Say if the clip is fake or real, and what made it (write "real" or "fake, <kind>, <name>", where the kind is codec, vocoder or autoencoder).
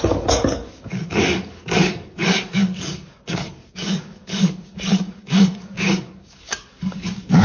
fake, codec, DAC